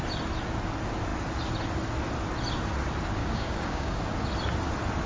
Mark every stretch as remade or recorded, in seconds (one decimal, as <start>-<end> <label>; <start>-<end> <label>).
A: 0.0-3.2 recorded; 3.2-4.0 remade; 4.0-5.1 recorded